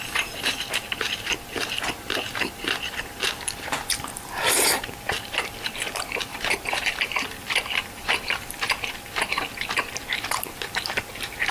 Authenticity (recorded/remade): remade